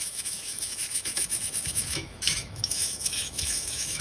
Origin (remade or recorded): remade